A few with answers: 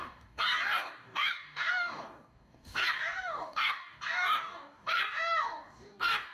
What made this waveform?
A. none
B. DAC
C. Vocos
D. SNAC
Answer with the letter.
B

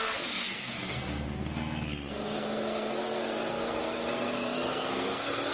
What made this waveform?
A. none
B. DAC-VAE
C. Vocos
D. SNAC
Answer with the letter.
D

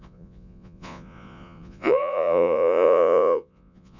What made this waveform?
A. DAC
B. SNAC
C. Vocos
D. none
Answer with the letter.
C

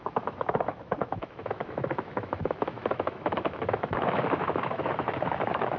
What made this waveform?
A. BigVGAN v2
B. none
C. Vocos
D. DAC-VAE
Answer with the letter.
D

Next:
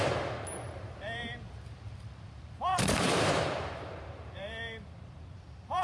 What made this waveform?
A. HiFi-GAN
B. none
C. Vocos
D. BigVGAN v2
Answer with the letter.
D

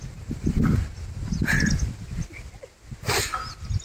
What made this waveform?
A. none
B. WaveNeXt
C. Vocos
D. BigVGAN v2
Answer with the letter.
A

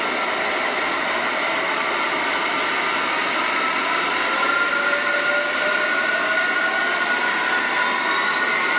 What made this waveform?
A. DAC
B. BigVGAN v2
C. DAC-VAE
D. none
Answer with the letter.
D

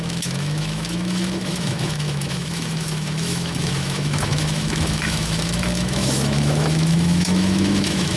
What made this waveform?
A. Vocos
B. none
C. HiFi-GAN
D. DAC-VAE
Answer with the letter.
D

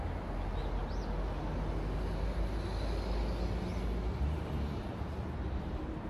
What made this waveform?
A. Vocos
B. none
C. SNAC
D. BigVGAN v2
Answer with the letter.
B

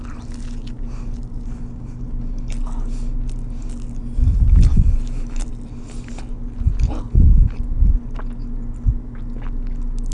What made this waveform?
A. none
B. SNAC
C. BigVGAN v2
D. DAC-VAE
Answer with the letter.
A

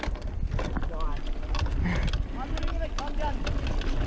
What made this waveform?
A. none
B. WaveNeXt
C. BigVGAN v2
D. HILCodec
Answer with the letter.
A